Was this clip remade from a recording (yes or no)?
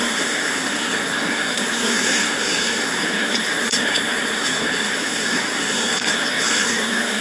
yes